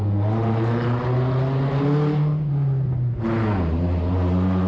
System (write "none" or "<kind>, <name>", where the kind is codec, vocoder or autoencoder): none